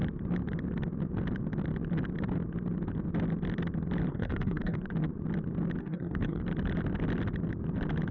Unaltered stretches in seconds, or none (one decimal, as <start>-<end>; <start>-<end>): 0.0-4.1; 4.8-5.8; 6.4-8.1